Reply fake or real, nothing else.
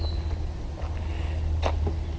real